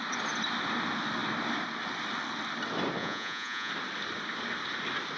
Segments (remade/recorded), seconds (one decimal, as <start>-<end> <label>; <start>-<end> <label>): 0.0-3.0 recorded; 3.0-3.7 remade; 3.7-5.2 recorded